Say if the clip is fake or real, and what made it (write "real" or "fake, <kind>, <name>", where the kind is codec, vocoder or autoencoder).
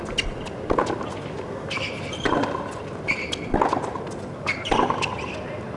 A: real